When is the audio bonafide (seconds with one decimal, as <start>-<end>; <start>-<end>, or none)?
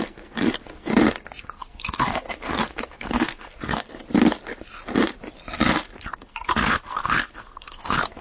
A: 0.9-1.4; 4.0-6.2